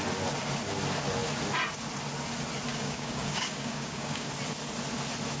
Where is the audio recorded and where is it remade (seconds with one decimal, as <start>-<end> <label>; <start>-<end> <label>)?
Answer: 0.0-2.7 recorded; 2.7-4.3 remade; 4.3-5.4 recorded

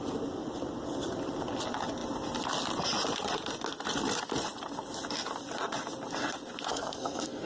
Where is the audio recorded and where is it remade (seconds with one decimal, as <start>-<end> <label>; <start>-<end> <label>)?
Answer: 0.0-6.7 recorded; 6.7-7.5 remade